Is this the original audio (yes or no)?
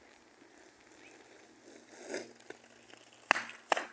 yes